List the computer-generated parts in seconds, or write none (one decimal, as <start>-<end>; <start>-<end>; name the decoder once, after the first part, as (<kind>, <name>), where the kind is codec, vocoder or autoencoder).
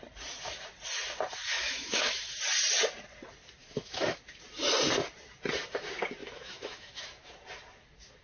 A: 1.5-2.4 (autoencoder, DAC-VAE); 3.6-4.2; 6.2-7.3